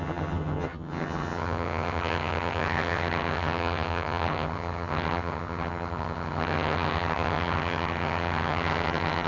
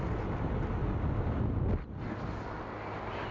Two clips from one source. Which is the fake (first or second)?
first